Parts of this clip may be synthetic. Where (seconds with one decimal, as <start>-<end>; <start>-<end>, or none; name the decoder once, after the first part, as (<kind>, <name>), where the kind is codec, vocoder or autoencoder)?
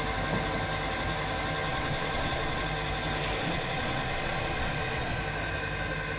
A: 1.7-2.6 (vocoder, Vocos); 3.4-5.2